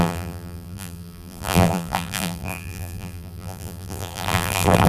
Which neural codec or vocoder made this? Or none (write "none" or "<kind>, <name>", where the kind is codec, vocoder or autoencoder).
vocoder, BigVGAN v2